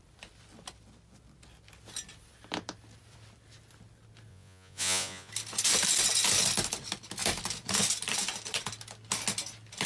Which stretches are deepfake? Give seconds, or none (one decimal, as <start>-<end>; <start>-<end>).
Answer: 4.3-5.3